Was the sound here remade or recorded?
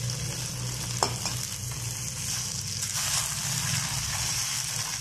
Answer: recorded